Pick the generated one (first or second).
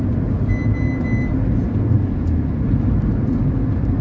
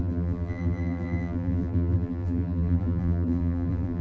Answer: second